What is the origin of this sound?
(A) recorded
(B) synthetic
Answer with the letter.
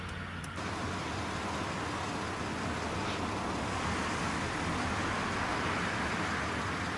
A